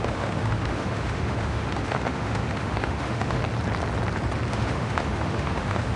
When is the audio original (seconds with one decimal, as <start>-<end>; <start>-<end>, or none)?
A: 3.4-4.5